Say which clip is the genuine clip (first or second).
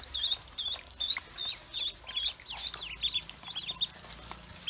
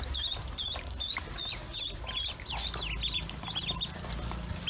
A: first